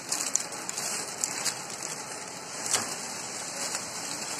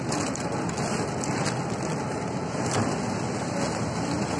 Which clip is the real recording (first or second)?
second